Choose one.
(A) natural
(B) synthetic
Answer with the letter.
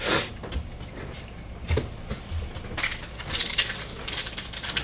A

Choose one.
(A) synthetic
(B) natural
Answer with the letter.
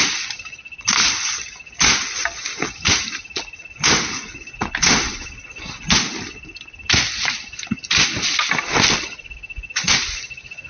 B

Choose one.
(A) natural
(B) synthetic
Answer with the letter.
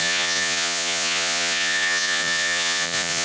B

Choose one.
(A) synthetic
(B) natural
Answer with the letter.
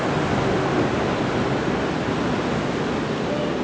B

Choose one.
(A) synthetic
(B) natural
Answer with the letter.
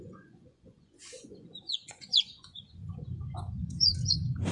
A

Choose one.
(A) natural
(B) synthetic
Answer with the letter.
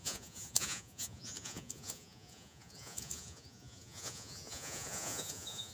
B